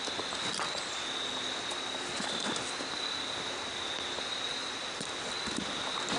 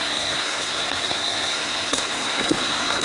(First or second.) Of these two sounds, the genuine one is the first